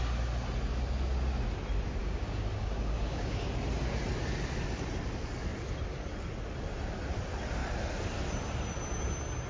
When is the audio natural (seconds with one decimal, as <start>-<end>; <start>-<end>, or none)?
0.0-2.0; 3.4-9.5